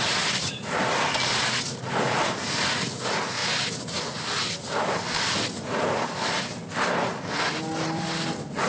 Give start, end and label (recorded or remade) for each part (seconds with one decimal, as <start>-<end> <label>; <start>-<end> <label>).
0.0-8.7 recorded